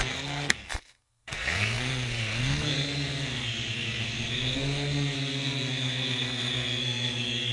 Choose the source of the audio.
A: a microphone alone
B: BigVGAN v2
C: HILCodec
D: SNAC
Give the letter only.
D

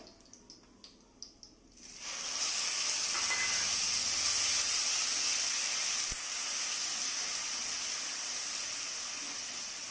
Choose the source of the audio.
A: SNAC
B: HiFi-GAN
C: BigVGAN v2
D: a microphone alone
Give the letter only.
D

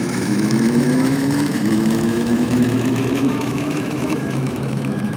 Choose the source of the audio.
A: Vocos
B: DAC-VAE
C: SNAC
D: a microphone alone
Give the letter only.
B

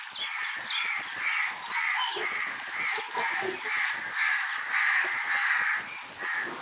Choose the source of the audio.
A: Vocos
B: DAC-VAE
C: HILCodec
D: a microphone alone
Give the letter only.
D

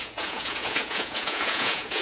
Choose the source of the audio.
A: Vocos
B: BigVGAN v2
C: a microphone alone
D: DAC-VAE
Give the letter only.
A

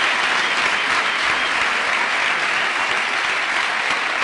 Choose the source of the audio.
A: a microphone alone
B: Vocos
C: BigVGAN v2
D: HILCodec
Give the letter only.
A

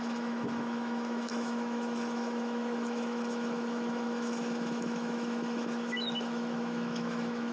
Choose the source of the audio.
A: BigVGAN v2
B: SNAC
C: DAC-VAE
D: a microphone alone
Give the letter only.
C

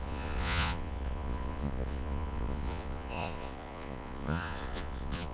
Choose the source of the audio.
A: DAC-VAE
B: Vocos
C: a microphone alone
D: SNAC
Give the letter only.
B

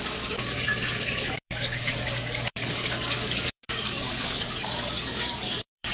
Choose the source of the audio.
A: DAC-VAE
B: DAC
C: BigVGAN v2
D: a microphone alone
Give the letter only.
B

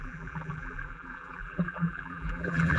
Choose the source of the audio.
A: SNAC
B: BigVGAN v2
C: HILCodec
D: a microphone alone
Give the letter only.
B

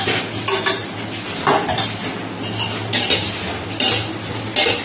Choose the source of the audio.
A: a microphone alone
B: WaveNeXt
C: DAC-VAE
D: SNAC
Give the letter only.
A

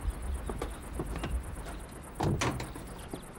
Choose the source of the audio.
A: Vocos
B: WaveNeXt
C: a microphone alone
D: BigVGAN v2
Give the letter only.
C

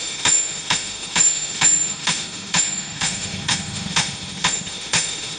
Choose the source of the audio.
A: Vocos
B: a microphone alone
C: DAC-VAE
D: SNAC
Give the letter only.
C